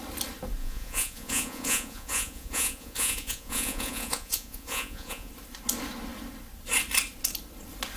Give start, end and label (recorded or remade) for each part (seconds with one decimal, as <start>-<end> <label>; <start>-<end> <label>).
0.0-0.6 recorded; 0.6-5.3 remade; 5.3-8.0 recorded